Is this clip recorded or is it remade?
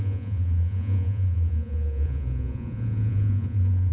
remade